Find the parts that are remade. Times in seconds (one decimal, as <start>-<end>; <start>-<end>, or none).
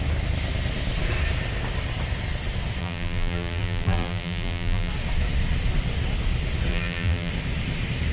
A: 2.8-4.9; 6.7-7.3